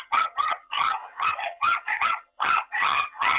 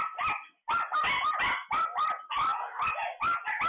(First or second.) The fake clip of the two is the first